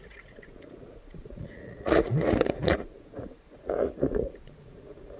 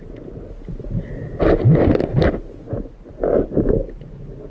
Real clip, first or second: second